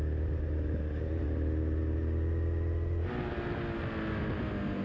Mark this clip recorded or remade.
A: recorded